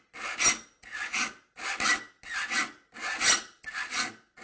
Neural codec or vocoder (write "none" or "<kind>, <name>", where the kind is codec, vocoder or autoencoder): none